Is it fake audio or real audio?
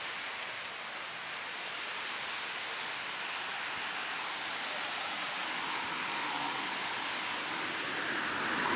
real